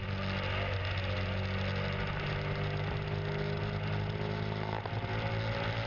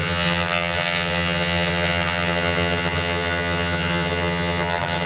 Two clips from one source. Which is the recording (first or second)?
first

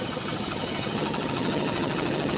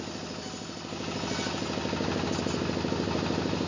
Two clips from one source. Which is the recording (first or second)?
second